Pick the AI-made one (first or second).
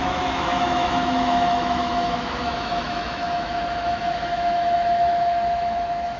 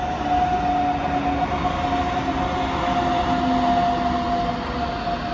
first